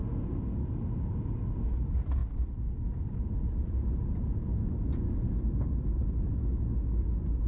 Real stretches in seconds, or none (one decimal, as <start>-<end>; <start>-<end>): 0.0-1.8; 6.3-7.0